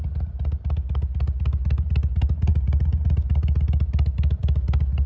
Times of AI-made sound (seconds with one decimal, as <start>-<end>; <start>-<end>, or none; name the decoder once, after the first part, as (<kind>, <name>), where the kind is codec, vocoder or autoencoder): none